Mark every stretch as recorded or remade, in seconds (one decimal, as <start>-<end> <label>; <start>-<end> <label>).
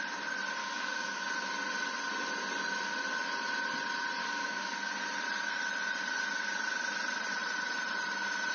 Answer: 0.0-0.6 recorded; 0.6-1.2 remade; 1.2-4.2 recorded; 4.2-4.8 remade; 4.8-8.5 recorded